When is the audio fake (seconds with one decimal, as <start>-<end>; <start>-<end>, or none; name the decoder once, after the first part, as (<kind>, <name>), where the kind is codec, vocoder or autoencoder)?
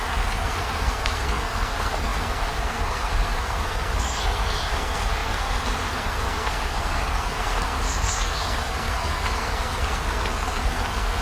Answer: 0.0-11.2 (codec, SNAC)